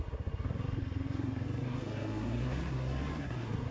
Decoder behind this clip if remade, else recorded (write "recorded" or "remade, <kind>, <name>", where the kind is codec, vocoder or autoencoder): remade, codec, SNAC